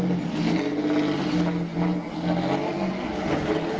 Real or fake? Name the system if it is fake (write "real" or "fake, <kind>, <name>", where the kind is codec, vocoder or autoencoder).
real